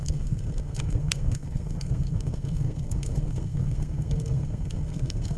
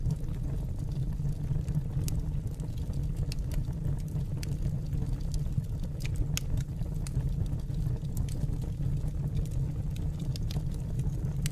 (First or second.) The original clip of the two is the second